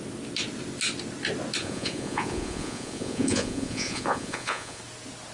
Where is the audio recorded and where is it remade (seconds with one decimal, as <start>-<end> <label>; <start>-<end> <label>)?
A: 0.0-1.6 recorded; 1.6-4.8 remade; 4.8-5.3 recorded